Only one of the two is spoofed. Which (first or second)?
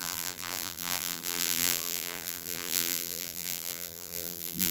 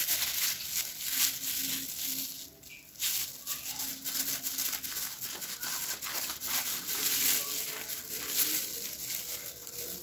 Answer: first